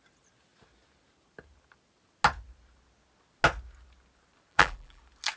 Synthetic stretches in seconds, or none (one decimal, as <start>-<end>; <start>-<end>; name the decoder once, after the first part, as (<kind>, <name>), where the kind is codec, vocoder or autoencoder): 4.5-5.0 (vocoder, BigVGAN v2)